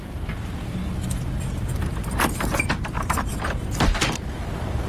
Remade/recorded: remade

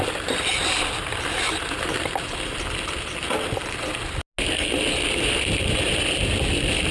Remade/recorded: recorded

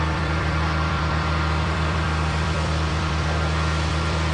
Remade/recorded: remade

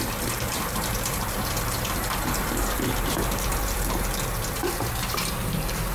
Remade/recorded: remade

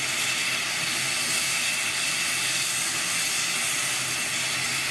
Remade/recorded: recorded